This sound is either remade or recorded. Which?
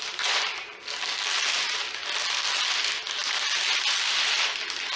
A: recorded